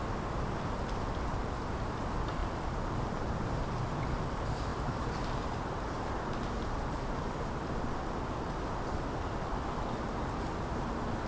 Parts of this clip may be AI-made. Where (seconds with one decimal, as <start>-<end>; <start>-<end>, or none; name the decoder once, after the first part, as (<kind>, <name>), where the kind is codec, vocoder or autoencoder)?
2.4-3.7 (vocoder, BigVGAN v2); 4.7-7.4